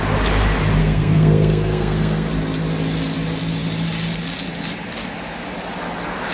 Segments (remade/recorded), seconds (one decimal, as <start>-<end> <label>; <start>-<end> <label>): 0.0-0.8 recorded; 0.8-2.3 remade; 2.3-6.3 recorded